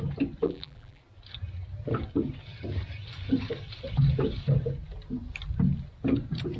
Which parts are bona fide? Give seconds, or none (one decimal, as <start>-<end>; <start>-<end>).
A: 0.0-0.4; 1.0-6.6